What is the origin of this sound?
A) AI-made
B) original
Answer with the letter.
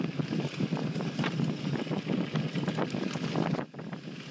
B